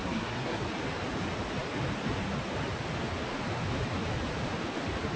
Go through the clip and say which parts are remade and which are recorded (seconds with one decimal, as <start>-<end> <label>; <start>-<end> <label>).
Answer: 0.0-0.6 remade; 0.6-5.2 recorded